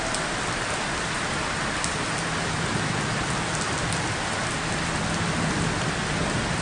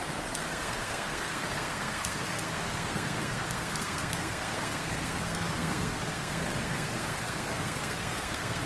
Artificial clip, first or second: second